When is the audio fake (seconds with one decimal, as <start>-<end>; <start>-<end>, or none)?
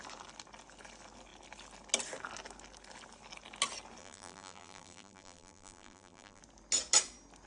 4.0-6.4